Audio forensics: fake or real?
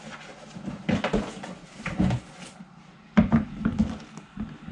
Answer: fake